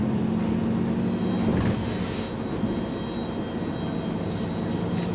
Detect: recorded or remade recorded